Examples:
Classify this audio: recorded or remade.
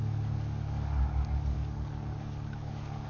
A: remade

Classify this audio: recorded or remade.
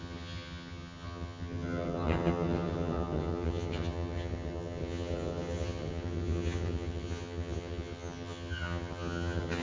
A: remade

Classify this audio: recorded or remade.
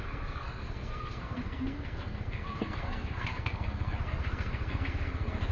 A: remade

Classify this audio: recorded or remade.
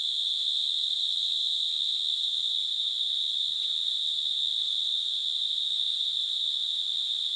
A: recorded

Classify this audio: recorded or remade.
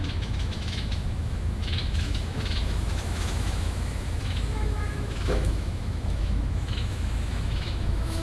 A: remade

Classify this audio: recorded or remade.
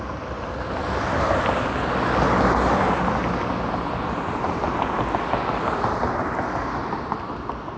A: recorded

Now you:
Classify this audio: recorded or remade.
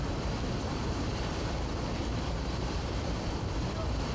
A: remade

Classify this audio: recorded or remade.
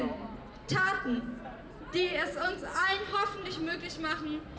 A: recorded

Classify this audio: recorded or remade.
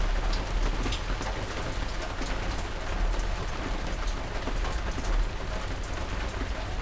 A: recorded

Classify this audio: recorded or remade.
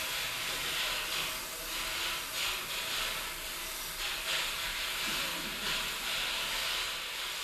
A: recorded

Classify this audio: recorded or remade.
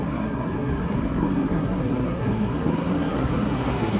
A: remade